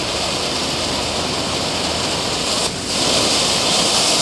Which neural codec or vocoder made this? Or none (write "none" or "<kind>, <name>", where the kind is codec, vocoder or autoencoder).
none